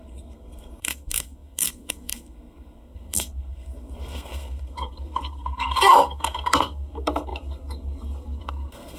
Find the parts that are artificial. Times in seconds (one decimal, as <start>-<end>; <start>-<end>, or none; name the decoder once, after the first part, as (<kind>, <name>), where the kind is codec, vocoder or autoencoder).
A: 0.0-9.0 (codec, SNAC)